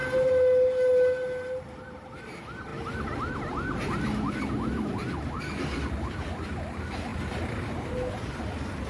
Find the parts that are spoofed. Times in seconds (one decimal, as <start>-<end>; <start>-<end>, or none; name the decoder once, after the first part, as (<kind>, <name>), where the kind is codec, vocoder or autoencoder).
none